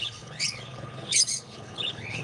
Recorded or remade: remade